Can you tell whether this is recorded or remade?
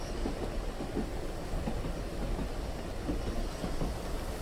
recorded